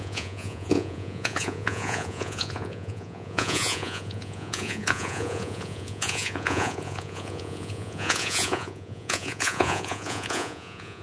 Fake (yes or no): yes